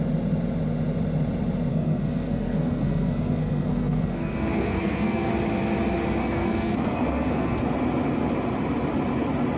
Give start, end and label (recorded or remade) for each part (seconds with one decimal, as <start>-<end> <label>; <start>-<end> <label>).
0.0-1.7 recorded; 1.7-5.3 remade; 5.3-6.2 recorded; 6.2-7.6 remade; 7.6-9.6 recorded